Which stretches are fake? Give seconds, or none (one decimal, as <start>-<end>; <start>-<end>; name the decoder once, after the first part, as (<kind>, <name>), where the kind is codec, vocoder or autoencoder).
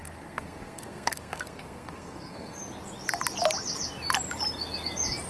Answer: 0.0-2.6 (codec, SNAC)